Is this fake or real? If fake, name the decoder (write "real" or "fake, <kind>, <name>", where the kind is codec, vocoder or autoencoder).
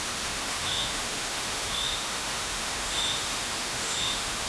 fake, autoencoder, DAC-VAE